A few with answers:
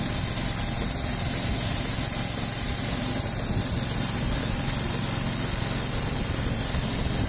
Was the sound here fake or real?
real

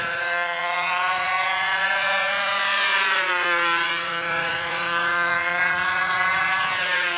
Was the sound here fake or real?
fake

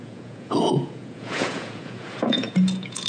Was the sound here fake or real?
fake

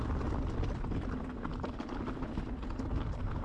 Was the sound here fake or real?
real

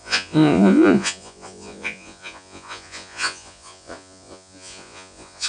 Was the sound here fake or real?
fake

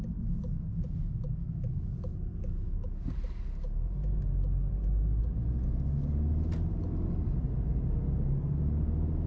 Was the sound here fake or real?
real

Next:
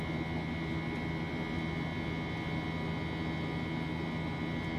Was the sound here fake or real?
real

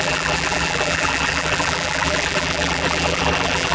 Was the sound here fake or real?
fake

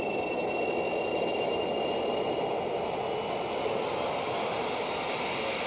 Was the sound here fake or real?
real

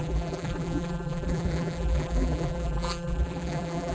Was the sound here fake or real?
fake